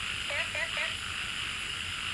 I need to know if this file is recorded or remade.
recorded